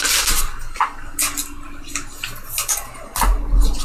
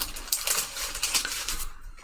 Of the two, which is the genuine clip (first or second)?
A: first